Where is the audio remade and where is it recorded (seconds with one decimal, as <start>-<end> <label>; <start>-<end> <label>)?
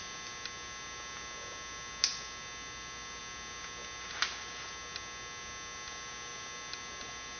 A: 0.0-7.4 recorded